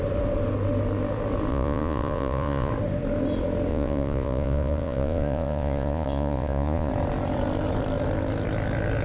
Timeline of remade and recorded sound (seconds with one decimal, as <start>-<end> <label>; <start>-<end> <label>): 0.0-1.5 recorded; 1.5-2.7 remade; 2.7-3.7 recorded; 3.7-6.9 remade; 6.9-9.0 recorded